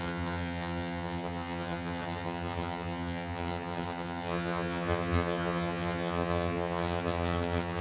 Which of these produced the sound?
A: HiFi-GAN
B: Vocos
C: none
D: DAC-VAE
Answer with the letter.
A